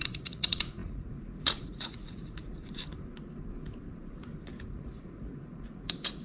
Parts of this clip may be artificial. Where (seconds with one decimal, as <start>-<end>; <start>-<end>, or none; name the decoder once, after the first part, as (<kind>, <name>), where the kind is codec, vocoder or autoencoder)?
0.0-2.8 (vocoder, Vocos); 4.7-6.2